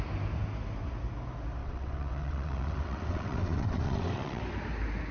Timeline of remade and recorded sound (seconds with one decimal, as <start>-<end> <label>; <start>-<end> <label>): 0.0-1.6 recorded; 1.6-4.4 remade; 4.4-5.1 recorded